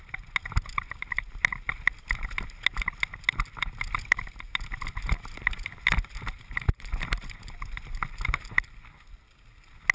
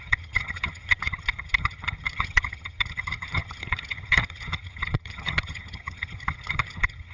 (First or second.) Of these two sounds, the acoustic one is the first